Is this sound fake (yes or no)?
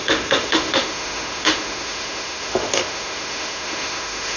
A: yes